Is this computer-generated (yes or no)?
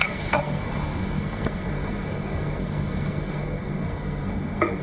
yes